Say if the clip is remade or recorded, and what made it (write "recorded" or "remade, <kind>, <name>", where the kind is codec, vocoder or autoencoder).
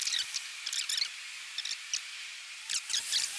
recorded